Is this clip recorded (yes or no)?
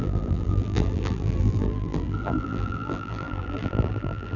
no